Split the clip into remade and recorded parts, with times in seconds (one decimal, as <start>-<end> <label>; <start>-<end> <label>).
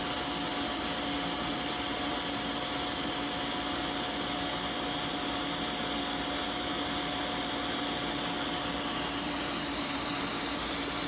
0.0-9.2 recorded; 9.2-10.1 remade; 10.1-11.1 recorded